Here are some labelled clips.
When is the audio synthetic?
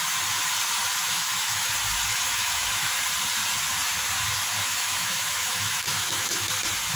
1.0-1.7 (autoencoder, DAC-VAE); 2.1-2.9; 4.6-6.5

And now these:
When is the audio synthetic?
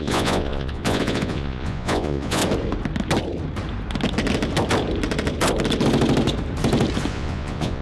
0.0-2.4 (vocoder, Vocos); 7.1-7.8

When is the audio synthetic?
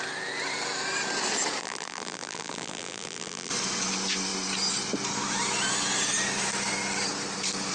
1.6-3.5 (vocoder, BigVGAN v2)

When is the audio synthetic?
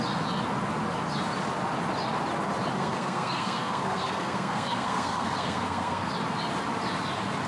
2.8-6.1 (codec, SNAC)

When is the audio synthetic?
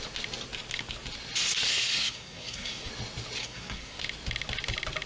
1.7-2.9 (codec, SNAC); 3.4-4.0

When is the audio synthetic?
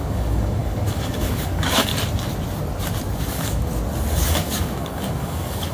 0.0-1.9 (codec, DAC); 3.2-3.7; 4.3-5.7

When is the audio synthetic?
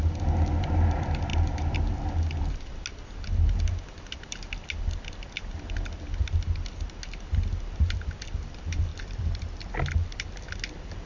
8.9-9.7 (vocoder, BigVGAN v2)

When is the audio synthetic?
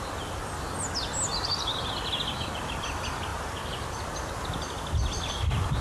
none